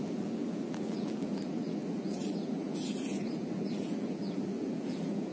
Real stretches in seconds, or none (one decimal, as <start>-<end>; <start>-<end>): none